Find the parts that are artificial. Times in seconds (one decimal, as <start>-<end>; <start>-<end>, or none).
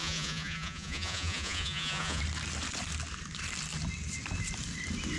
0.0-2.2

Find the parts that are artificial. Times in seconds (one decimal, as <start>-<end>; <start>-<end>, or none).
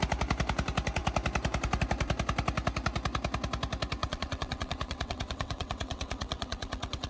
4.0-7.1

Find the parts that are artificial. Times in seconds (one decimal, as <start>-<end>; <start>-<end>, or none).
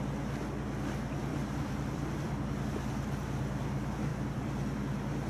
1.3-2.5; 4.1-4.8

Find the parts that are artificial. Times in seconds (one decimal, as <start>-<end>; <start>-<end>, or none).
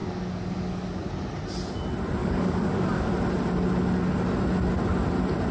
0.0-1.1; 2.2-3.1